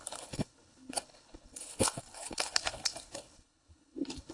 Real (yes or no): no